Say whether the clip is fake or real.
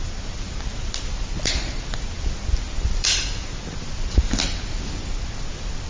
real